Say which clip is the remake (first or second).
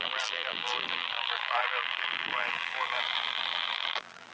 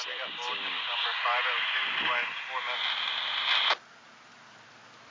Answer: first